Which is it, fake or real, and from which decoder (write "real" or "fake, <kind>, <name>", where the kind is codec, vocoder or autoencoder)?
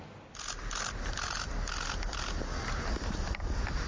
real